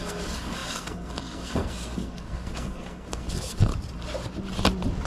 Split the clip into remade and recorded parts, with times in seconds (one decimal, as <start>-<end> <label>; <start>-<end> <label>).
0.0-3.7 remade; 3.7-5.1 recorded